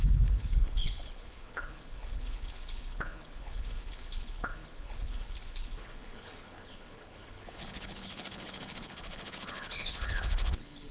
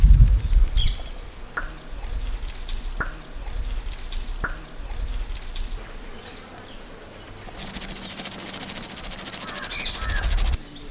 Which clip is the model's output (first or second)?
first